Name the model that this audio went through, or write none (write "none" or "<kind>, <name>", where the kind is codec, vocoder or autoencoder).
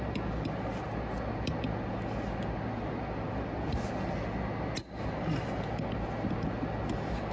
none